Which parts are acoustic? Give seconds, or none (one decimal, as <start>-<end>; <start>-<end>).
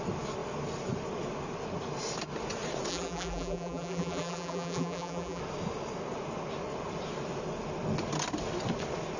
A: 0.0-2.9; 5.4-9.2